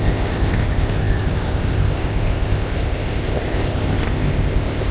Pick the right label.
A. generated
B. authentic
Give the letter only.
A